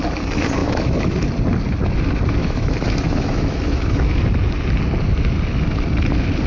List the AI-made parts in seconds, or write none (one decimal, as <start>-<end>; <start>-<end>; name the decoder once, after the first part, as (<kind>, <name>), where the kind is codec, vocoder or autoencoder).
0.6-1.1 (autoencoder, DAC-VAE); 2.4-4.1